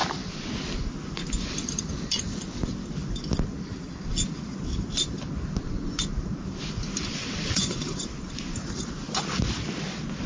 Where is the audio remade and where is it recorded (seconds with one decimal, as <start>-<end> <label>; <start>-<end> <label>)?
0.0-7.2 recorded; 7.2-8.0 remade; 8.0-10.3 recorded